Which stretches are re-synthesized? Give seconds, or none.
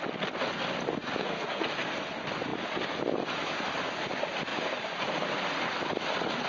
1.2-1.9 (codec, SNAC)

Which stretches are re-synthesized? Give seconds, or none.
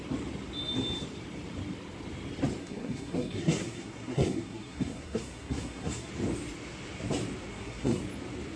2.6-6.1 (codec, SNAC); 7.5-8.0